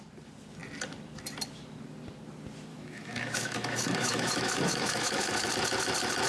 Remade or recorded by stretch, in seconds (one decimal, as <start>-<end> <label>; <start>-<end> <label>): 0.0-2.7 recorded; 2.7-5.5 remade; 5.5-6.3 recorded